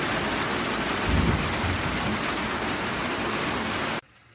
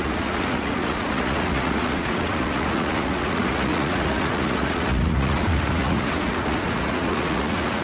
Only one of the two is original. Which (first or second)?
first